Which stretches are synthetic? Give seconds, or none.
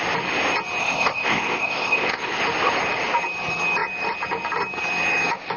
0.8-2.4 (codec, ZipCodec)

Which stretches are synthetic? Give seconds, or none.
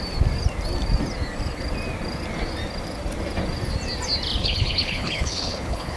4.4-6.0 (codec, HILCodec)